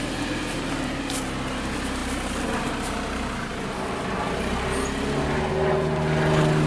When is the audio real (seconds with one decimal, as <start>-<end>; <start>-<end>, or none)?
0.0-6.7